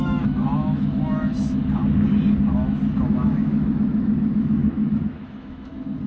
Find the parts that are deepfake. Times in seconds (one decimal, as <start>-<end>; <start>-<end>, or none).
0.0-1.6; 3.0-6.1